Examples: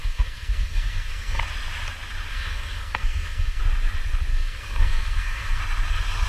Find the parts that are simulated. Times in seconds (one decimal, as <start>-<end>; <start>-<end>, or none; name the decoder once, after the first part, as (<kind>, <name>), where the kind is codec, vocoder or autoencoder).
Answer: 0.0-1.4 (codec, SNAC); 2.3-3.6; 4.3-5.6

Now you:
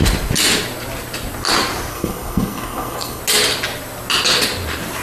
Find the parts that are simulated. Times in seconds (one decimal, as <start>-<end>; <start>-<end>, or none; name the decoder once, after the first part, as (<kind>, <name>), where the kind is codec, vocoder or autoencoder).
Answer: 1.9-3.2 (codec, SNAC)

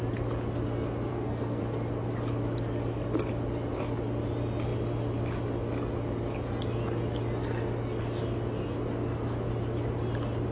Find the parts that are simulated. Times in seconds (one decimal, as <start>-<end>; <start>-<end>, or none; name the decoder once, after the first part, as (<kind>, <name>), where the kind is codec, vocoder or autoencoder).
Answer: 1.1-1.6 (codec, SNAC)

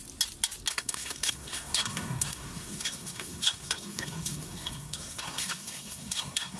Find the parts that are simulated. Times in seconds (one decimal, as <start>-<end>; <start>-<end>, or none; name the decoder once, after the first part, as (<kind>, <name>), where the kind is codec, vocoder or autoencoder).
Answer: 0.7-6.6 (codec, SNAC)